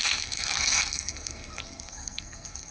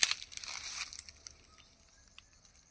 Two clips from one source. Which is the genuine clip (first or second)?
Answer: second